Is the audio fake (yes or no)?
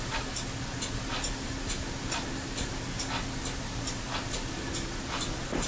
no